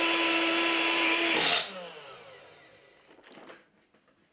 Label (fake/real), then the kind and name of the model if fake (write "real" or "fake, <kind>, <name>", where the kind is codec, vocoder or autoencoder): real